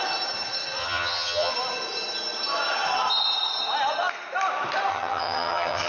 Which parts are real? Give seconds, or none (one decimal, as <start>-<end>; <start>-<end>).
0.0-0.8; 1.5-4.9